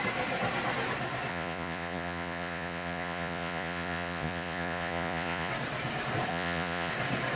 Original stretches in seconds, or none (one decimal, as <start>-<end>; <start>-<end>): 0.0-1.3; 5.5-6.3; 6.9-7.4